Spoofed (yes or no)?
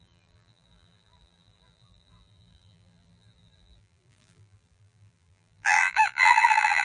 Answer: yes